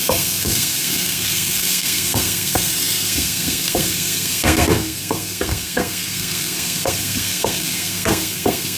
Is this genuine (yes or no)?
no